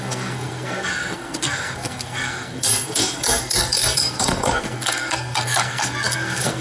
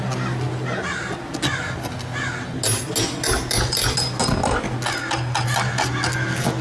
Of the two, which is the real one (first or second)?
second